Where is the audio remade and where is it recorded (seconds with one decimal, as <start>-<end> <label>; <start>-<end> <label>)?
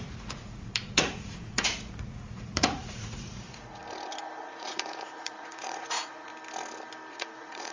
0.0-3.8 remade; 3.8-4.4 recorded; 4.4-6.3 remade; 6.3-7.1 recorded; 7.1-7.7 remade